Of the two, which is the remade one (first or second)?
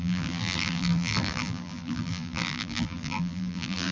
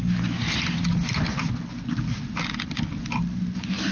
first